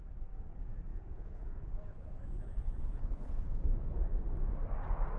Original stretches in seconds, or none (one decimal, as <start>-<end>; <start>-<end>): 0.0-0.9; 4.0-5.2